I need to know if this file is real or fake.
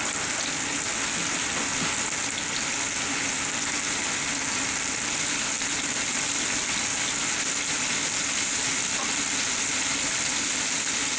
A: real